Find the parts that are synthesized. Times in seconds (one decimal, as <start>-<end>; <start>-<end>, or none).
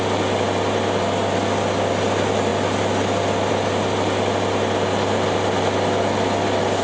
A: none